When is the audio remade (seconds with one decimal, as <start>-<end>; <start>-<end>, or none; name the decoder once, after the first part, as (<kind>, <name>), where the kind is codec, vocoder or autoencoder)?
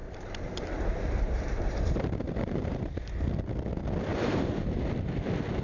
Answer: 0.0-3.0 (vocoder, BigVGAN v2); 4.1-4.8